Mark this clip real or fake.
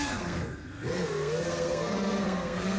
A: fake